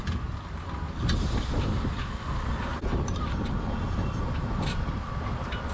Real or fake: real